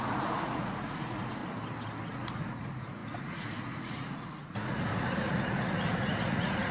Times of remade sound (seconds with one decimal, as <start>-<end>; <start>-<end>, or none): 0.0-1.4; 2.1-6.7